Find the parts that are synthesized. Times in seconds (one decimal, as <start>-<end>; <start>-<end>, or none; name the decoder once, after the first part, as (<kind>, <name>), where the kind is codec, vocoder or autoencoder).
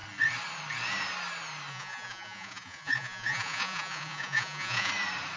1.7-4.9 (vocoder, Vocos)